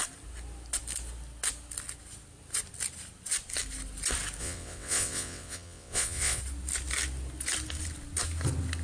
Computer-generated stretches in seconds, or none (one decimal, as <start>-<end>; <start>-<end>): 4.4-6.4